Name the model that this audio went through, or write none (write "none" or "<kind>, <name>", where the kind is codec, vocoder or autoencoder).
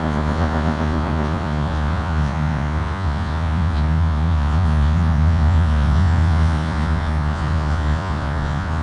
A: vocoder, Vocos